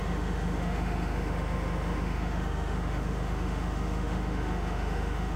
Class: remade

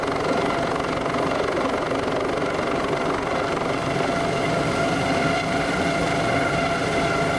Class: recorded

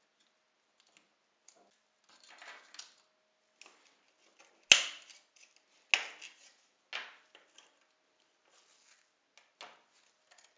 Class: recorded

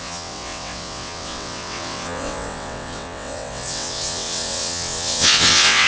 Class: remade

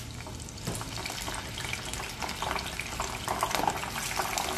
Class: recorded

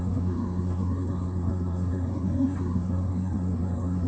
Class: remade